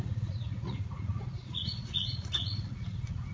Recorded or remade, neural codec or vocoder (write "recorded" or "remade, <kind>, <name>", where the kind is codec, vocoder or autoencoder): remade, vocoder, Vocos